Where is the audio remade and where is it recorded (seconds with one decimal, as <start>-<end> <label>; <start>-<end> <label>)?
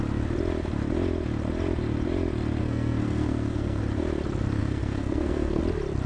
0.0-2.6 recorded; 2.6-3.8 remade; 3.8-4.6 recorded; 4.6-5.6 remade; 5.6-6.1 recorded